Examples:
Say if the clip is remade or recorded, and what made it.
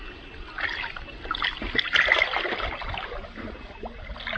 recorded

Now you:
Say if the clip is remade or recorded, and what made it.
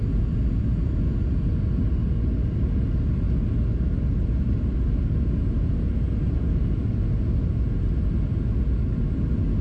recorded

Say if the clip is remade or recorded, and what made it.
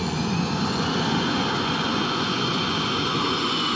remade, vocoder, Vocos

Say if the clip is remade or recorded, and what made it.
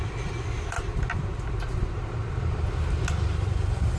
recorded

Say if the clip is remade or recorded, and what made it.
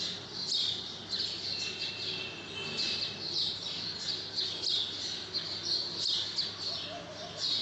recorded